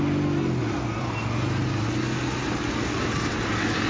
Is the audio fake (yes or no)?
no